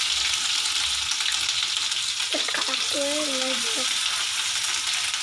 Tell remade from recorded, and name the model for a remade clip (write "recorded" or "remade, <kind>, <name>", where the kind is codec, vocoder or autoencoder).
recorded